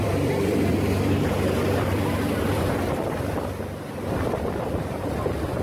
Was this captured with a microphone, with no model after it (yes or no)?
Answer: no